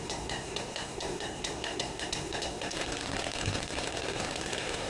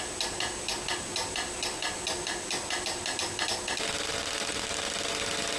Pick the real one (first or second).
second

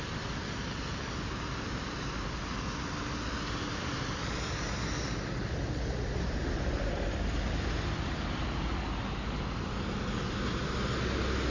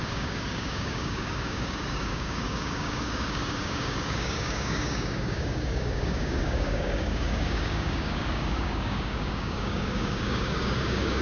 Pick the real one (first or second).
first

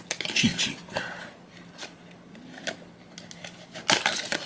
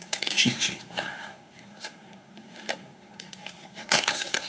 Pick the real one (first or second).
first